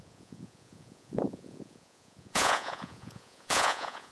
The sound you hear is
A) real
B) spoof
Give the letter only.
B